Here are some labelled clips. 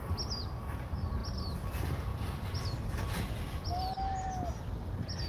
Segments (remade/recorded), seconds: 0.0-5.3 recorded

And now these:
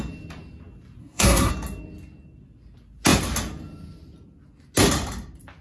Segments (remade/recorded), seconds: 0.0-1.0 recorded; 1.0-1.5 remade; 1.5-5.6 recorded